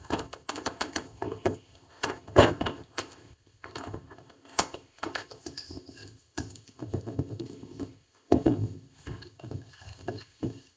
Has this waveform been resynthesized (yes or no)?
yes